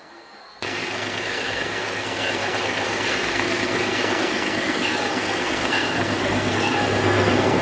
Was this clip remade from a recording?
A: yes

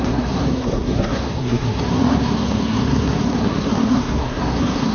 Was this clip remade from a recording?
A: yes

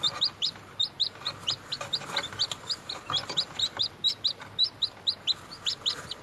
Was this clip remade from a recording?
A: no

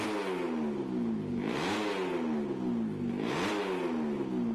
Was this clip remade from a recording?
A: no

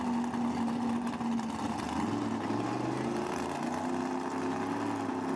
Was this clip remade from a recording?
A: no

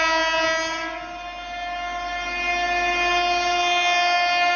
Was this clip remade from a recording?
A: no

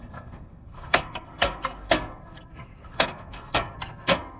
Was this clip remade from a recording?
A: yes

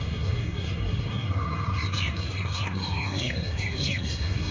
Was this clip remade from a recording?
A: yes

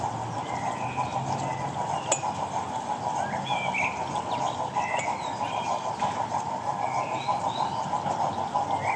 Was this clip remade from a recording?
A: no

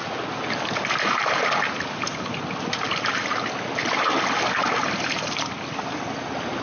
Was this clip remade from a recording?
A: no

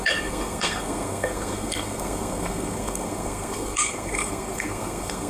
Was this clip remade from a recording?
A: yes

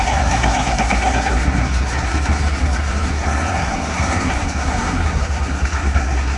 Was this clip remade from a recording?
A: yes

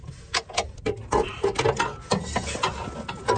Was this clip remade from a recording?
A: no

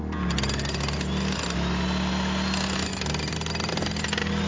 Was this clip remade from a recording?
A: no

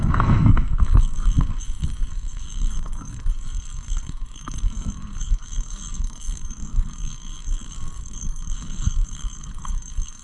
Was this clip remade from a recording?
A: yes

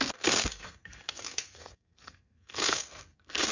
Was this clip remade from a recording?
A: yes